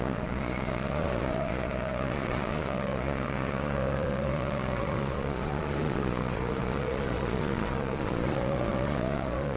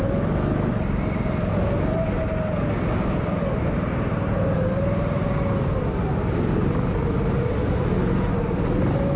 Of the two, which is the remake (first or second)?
first